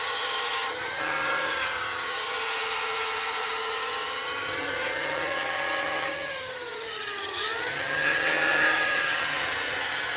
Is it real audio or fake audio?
fake